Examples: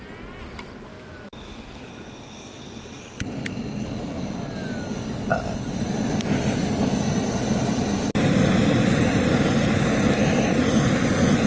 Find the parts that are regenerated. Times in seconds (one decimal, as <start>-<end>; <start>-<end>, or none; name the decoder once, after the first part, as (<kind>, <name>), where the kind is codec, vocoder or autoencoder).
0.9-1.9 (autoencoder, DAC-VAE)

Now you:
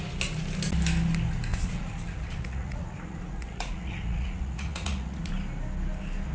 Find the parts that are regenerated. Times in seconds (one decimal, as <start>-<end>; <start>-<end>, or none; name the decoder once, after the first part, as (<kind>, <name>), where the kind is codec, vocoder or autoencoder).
1.5-5.3 (vocoder, Vocos)

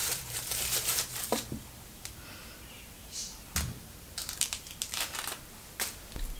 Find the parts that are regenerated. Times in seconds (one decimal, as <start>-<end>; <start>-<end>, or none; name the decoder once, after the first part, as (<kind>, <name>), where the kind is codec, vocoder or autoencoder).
0.0-3.8 (vocoder, BigVGAN v2); 4.2-5.4

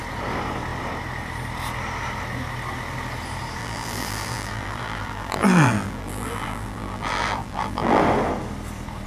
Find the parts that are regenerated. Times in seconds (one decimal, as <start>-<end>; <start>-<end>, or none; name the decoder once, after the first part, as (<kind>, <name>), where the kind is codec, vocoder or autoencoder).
3.6-8.0 (vocoder, BigVGAN v2)